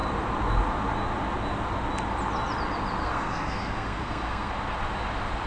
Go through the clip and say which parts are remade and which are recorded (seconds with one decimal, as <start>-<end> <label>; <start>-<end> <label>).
0.0-3.0 recorded; 3.0-4.5 remade; 4.5-5.5 recorded